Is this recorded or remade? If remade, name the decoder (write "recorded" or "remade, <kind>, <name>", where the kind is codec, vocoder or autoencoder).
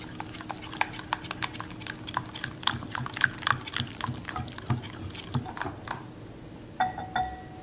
recorded